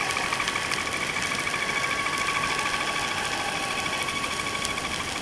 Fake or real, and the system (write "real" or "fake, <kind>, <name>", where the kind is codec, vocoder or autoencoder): real